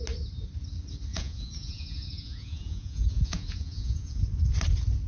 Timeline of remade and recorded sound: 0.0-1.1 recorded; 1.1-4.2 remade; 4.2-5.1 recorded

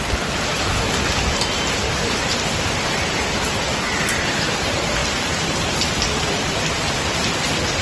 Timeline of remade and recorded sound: 0.0-5.0 recorded; 5.0-5.9 remade; 5.9-7.8 recorded

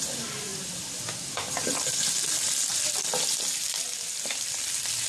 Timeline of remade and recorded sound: 0.0-5.1 recorded

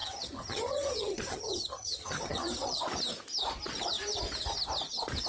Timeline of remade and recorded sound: 0.0-2.8 remade; 2.8-5.3 recorded

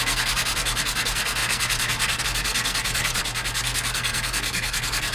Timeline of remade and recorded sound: 0.0-5.1 remade

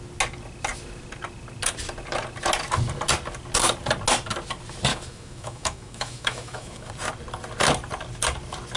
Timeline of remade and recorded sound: 0.0-4.9 recorded; 4.9-6.9 remade; 6.9-8.8 recorded

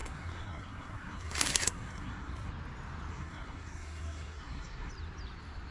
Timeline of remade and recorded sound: 0.0-2.5 remade; 2.5-3.1 recorded; 3.1-4.9 remade; 4.9-5.7 recorded

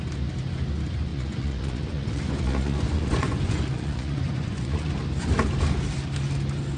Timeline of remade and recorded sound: 0.0-1.1 recorded; 1.1-4.9 remade; 4.9-6.8 recorded